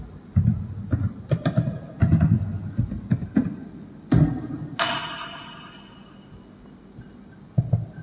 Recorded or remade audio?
recorded